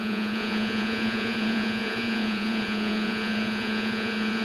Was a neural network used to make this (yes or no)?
yes